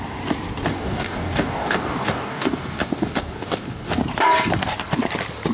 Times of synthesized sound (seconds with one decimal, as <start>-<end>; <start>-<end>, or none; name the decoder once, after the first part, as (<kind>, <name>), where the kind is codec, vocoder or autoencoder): 0.7-4.0 (codec, DAC)